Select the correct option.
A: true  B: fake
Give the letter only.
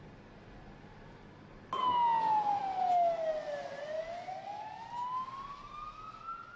A